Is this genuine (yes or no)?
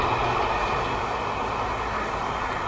yes